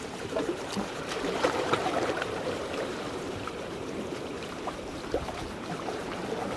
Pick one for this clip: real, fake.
fake